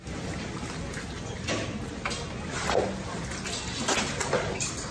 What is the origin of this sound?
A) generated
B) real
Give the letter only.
B